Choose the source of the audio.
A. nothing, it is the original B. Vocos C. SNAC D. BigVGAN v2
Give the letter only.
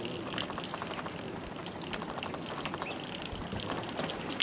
A